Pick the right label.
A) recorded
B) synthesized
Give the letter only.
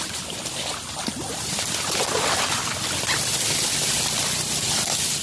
A